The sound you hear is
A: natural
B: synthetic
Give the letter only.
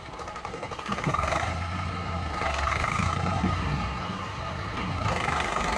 B